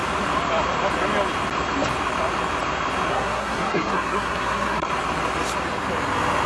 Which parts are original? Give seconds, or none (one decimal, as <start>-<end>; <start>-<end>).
0.0-3.1; 4.9-6.5